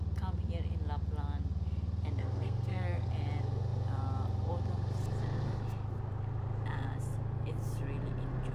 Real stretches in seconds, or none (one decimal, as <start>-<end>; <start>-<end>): 0.0-2.2; 3.1-8.5